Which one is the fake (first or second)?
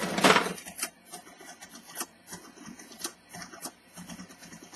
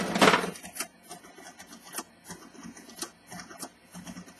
first